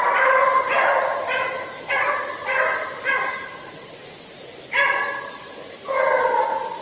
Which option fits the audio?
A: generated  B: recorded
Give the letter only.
B